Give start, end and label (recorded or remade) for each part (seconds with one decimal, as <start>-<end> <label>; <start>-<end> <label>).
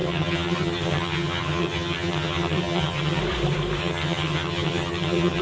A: 0.0-3.2 remade; 3.2-3.8 recorded; 3.8-5.4 remade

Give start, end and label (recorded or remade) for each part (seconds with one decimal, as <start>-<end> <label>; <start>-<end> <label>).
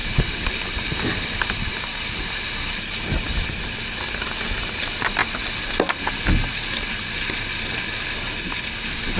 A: 0.0-9.2 recorded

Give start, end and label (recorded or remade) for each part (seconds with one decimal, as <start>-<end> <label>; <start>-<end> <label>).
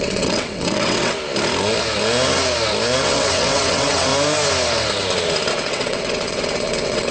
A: 0.0-1.1 remade; 1.1-3.0 recorded; 3.0-4.1 remade; 4.1-5.5 recorded; 5.5-7.1 remade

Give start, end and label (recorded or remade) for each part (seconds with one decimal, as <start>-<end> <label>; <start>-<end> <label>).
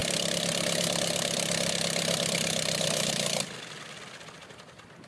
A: 0.0-5.1 recorded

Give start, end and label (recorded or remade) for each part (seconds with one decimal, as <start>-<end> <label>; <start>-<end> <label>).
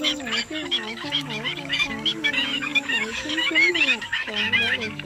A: 0.0-5.1 remade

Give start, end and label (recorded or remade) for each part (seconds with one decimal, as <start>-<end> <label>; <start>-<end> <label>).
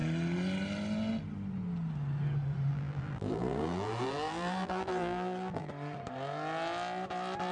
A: 0.0-2.7 recorded; 2.7-5.7 remade; 5.7-7.5 recorded